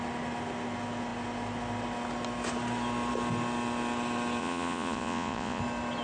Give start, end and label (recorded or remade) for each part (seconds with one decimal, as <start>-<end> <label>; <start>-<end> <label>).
0.0-4.4 recorded; 4.4-5.6 remade; 5.6-6.0 recorded